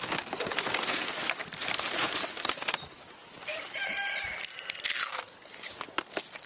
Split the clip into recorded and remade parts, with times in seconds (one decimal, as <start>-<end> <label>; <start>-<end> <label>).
0.0-1.2 recorded; 1.2-4.3 remade; 4.3-6.5 recorded